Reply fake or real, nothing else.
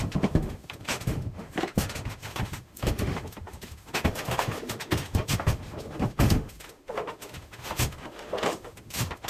fake